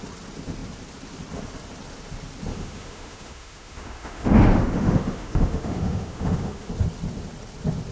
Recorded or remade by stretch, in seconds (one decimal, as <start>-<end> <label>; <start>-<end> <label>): 0.0-2.5 recorded; 2.5-6.7 remade; 6.7-7.9 recorded